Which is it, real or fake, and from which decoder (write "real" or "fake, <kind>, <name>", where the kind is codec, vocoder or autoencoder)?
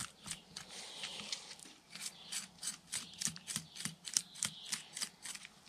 real